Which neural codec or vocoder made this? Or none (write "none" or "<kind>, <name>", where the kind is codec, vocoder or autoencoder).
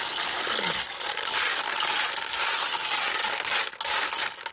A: none